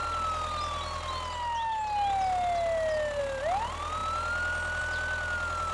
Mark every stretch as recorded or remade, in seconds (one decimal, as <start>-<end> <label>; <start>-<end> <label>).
0.0-5.7 recorded

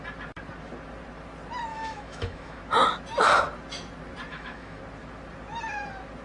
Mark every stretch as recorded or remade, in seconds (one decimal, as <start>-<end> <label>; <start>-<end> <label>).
0.0-1.7 recorded; 1.7-2.6 remade; 2.6-4.3 recorded; 4.3-4.8 remade; 4.8-6.2 recorded

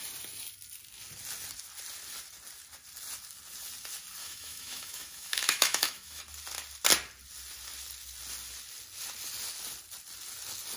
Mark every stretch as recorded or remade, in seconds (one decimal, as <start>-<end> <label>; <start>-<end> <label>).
0.0-4.2 recorded; 4.2-6.2 remade; 6.2-10.8 recorded

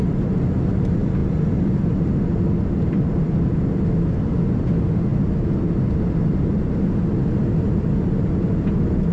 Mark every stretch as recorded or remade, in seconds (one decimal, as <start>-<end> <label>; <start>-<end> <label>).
0.0-9.1 recorded